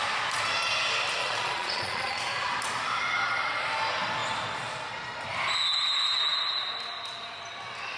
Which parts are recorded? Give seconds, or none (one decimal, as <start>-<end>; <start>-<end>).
0.0-1.2; 2.2-8.0